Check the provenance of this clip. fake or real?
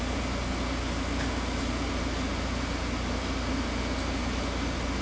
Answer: real